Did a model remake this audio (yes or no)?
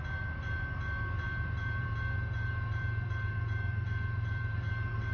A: yes